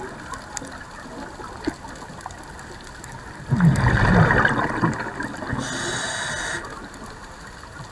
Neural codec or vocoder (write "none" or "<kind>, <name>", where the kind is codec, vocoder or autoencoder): none